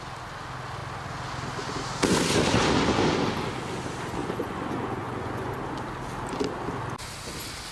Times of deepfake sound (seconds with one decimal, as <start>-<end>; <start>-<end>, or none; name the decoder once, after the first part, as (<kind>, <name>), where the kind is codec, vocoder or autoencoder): 4.2-5.5 (vocoder, Vocos)